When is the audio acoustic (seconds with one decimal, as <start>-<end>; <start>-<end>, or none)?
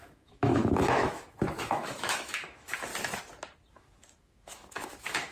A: 2.9-3.7